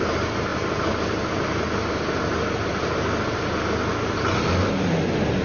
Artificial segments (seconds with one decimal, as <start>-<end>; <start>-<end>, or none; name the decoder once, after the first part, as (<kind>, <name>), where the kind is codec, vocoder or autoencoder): none